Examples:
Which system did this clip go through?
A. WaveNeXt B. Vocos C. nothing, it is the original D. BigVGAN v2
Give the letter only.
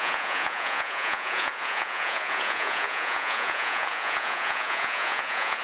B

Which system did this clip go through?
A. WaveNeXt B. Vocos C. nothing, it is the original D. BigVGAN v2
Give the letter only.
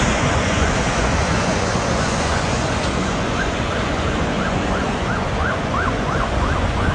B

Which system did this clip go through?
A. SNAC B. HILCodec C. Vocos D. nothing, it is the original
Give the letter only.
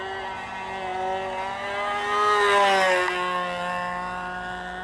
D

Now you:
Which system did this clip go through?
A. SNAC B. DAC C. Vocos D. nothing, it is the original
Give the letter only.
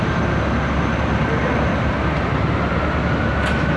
D